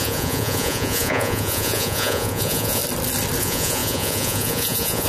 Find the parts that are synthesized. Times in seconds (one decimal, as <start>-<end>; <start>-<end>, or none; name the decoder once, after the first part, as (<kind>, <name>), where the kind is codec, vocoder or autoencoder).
0.0-2.8 (vocoder, Vocos); 3.4-5.1